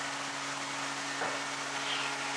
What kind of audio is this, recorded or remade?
recorded